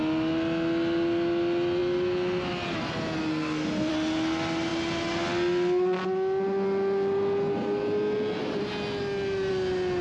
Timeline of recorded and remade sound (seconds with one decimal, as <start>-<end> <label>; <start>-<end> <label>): 0.0-3.3 recorded; 3.3-3.9 remade; 3.9-10.0 recorded